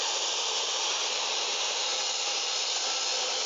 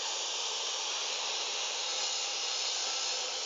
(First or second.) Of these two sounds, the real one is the second